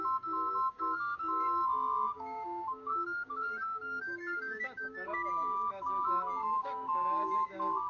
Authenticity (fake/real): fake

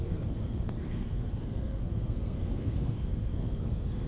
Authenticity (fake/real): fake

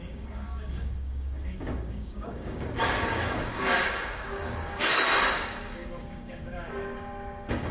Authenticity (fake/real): fake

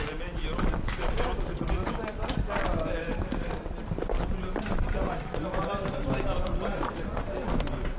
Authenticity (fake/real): real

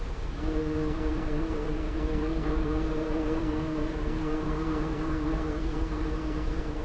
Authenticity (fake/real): fake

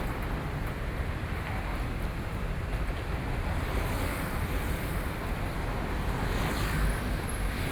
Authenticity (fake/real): real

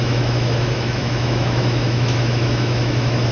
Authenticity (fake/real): fake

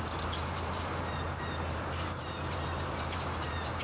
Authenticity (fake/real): fake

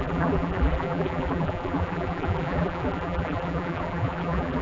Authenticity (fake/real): fake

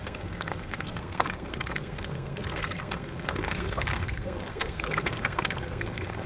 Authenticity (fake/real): fake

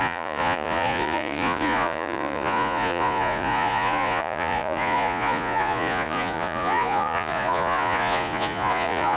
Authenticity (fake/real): fake